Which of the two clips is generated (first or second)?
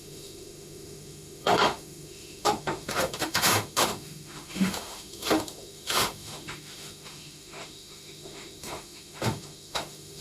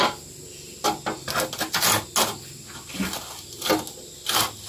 first